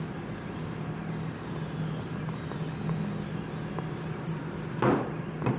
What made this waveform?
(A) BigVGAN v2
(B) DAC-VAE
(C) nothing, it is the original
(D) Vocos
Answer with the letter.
C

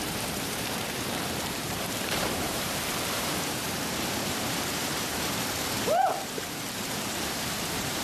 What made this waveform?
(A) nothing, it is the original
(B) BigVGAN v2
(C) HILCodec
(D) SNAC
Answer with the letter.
B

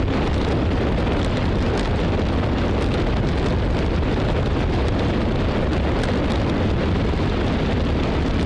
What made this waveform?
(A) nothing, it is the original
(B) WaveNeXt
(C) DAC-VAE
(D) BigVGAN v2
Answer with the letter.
A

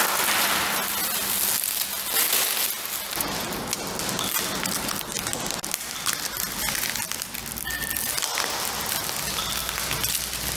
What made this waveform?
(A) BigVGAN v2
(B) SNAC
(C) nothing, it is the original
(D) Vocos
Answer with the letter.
C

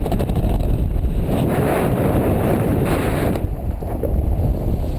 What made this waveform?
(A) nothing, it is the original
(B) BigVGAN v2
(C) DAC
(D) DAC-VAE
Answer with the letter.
A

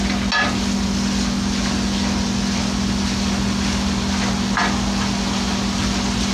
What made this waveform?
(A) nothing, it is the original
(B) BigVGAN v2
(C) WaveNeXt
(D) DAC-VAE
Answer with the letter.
A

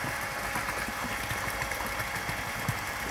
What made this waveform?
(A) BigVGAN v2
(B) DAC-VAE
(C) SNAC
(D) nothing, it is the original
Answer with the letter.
A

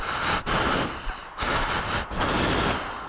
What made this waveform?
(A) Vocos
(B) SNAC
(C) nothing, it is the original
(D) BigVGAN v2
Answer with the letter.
C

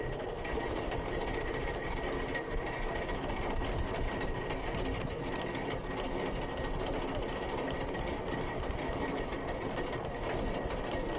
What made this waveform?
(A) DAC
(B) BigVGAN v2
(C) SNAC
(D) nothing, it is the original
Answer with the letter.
D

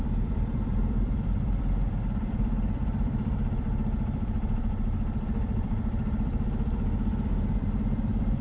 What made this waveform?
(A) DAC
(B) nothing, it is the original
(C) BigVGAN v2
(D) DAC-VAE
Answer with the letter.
C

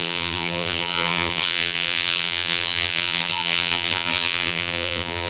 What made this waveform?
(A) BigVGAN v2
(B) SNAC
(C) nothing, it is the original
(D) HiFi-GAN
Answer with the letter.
A